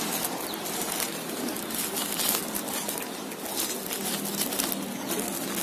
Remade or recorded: recorded